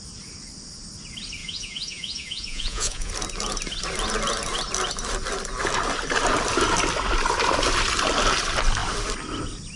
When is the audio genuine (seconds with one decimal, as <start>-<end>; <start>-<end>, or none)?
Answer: 0.0-1.4; 3.1-9.8